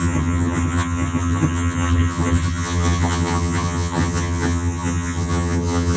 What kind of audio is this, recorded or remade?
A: remade